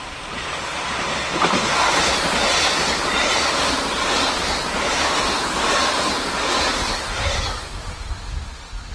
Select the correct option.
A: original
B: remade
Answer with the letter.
A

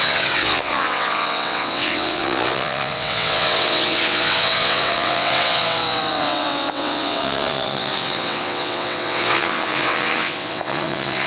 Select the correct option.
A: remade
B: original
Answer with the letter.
A